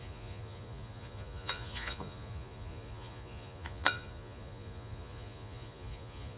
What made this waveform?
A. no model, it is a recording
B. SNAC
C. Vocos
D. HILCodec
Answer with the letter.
C